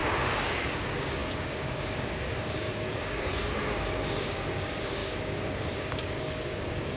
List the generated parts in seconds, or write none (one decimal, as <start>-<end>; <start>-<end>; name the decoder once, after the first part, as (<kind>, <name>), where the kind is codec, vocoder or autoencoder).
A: 0.0-7.0 (codec, DAC)